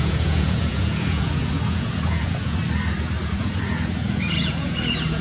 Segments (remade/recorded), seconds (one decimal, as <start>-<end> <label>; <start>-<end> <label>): 0.0-2.6 remade; 2.6-3.2 recorded; 3.2-5.2 remade